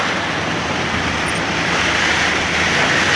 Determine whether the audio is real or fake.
real